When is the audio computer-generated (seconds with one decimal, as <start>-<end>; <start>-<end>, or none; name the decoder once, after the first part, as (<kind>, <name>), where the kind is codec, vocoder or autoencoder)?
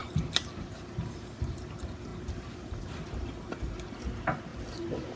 none